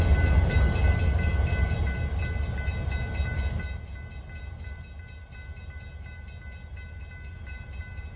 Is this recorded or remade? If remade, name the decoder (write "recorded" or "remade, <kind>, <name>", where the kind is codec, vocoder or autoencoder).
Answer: recorded